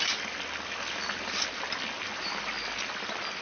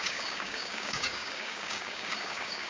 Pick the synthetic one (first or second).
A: second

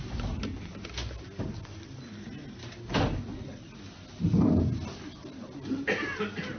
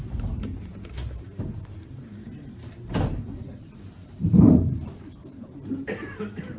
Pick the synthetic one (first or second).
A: second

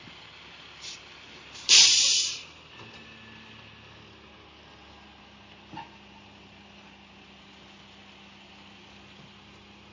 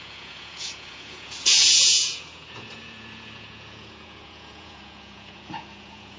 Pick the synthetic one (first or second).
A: second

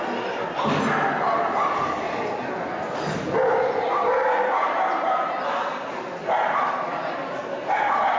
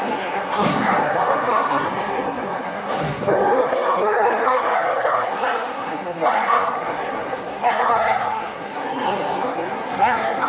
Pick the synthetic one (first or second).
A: second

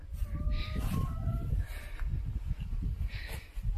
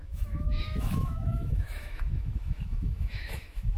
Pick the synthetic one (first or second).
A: second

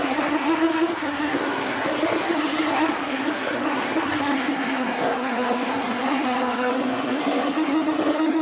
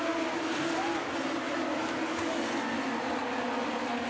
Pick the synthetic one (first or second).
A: first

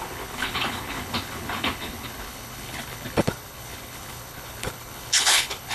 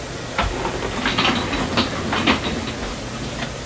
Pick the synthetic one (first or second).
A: first